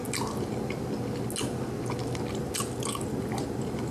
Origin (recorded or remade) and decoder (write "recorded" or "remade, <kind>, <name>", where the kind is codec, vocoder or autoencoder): recorded